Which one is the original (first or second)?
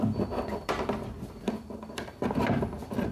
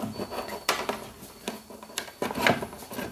second